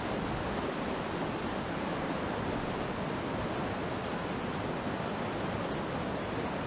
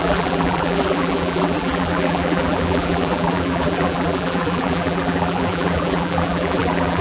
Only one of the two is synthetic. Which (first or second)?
second